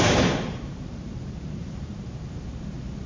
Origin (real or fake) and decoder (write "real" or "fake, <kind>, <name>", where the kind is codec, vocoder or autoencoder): fake, vocoder, BigVGAN v2